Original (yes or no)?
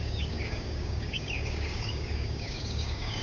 no